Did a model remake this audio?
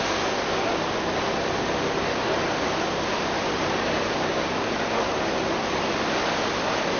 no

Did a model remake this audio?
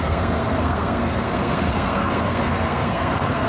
yes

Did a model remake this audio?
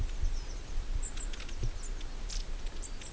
no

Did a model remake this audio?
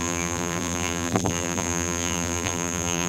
yes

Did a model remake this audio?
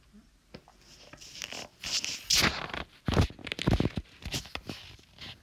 no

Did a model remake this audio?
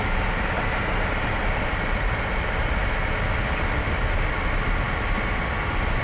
no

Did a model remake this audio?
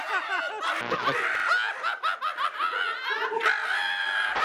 no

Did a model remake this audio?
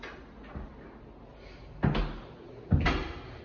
no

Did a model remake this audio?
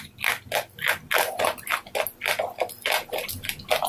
no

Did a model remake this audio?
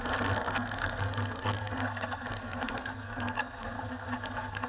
yes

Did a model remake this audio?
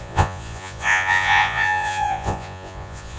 yes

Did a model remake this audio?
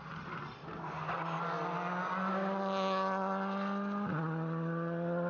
no